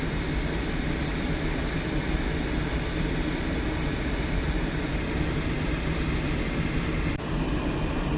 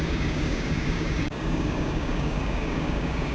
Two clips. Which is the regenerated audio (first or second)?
second